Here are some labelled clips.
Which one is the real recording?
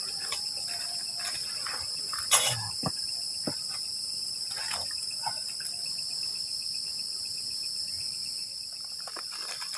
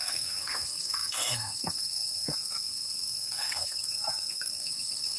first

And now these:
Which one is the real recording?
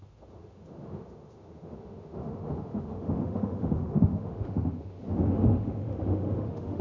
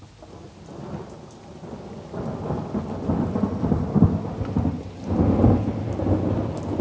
second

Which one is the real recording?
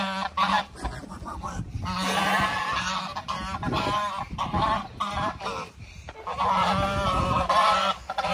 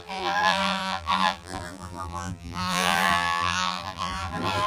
first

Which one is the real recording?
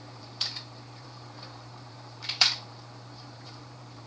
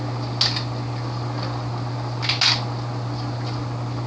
second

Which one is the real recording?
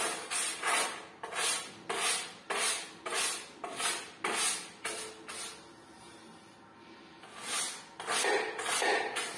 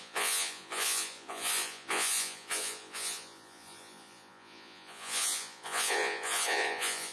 first